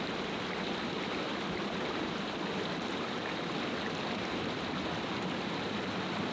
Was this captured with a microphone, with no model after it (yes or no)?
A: yes